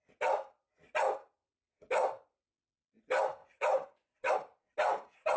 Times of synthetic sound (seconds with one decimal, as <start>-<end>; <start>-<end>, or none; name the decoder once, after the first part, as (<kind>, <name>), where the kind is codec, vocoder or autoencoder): 3.4-4.3 (vocoder, Vocos)